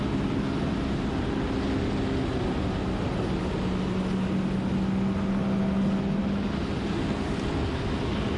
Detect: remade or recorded recorded